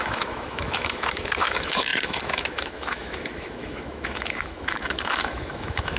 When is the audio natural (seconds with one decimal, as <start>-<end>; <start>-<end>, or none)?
none